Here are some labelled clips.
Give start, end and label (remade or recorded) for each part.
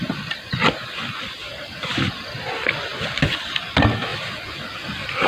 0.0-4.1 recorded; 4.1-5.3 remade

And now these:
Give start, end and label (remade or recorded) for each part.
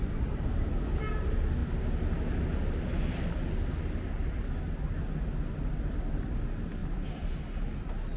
0.0-6.8 recorded; 6.8-7.3 remade; 7.3-8.2 recorded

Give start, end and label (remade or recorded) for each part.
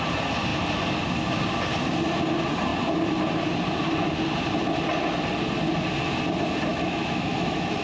0.0-6.7 recorded; 6.7-7.8 remade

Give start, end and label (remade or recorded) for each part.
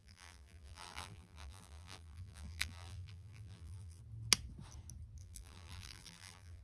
0.0-4.0 remade; 4.0-5.2 recorded; 5.2-6.6 remade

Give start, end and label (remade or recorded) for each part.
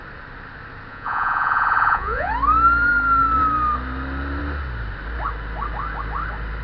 0.0-0.9 recorded; 0.9-2.3 remade; 2.3-6.6 recorded